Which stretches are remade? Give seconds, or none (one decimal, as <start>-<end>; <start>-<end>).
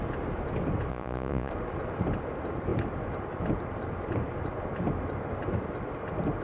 0.9-1.5